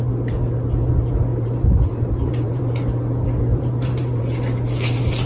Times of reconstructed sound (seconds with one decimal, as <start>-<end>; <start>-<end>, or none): 1.3-2.6; 3.5-4.2